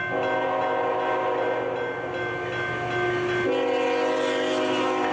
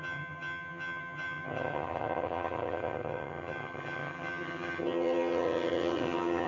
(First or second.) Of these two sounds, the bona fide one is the first